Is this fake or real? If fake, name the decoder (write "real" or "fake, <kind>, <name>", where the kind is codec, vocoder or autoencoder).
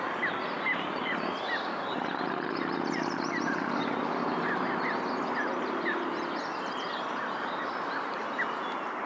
real